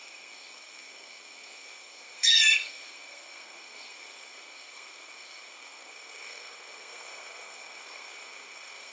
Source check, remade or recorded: remade